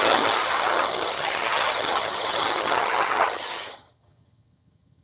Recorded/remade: remade